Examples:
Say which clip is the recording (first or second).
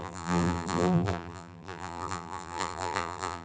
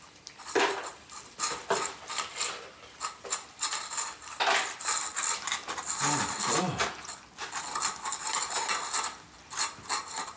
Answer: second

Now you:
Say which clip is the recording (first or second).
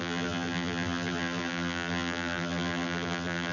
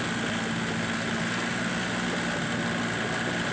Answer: second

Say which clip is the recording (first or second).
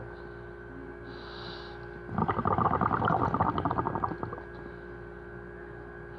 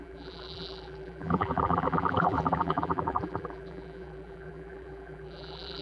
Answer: first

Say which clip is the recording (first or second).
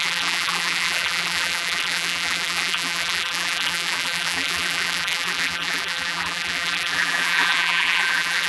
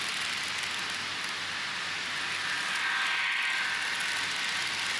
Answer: second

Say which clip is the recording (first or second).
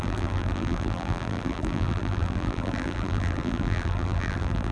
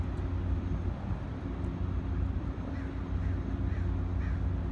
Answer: second